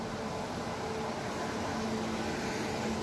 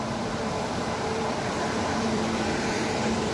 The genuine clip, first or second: first